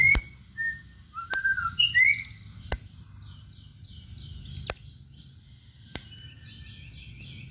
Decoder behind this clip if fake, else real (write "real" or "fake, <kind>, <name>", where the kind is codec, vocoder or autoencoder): real